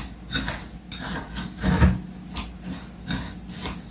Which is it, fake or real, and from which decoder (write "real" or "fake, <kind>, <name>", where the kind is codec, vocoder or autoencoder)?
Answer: real